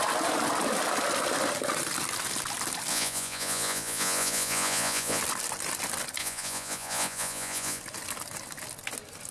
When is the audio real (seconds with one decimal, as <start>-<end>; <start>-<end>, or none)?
0.0-2.9; 5.2-6.2; 7.8-9.3